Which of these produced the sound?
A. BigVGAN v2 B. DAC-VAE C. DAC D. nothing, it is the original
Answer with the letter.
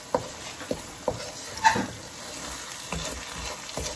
D